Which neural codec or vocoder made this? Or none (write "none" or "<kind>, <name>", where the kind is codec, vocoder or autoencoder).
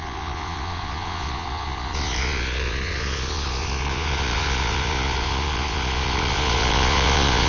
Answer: vocoder, Vocos